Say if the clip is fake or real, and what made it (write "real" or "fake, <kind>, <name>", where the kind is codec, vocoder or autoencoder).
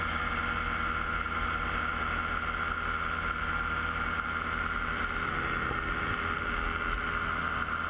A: real